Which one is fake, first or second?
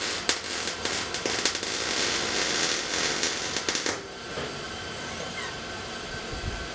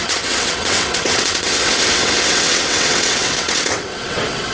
second